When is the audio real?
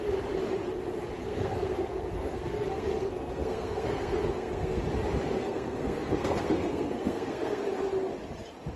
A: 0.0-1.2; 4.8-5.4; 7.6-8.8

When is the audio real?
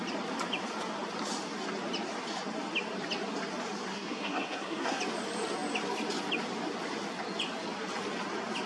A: 0.0-3.9; 5.0-8.7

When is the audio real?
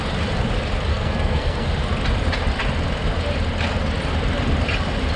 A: 0.0-0.9; 1.7-5.2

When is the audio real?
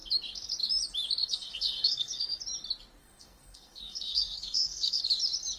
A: 0.0-1.2; 2.4-3.0; 5.0-5.6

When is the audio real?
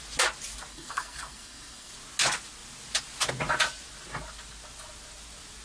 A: 0.0-0.7; 1.9-5.6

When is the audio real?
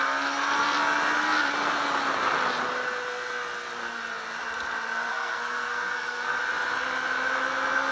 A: 0.0-5.1; 6.4-7.9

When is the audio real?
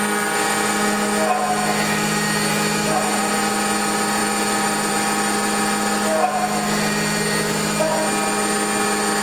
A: 0.0-9.2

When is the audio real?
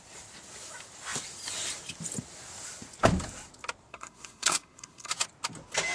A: 0.0-3.9; 5.1-5.9